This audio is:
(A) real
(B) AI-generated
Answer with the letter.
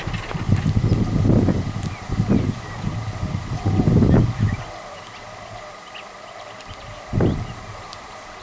A